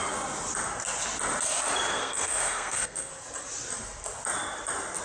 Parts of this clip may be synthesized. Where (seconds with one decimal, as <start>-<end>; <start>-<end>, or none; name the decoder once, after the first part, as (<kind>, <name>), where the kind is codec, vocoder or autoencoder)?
1.9-3.1 (codec, SNAC)